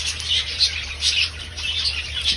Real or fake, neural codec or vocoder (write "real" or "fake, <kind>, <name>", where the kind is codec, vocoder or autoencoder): fake, vocoder, BigVGAN v2